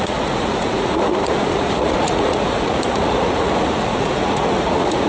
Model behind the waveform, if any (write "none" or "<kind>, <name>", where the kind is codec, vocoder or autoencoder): vocoder, Vocos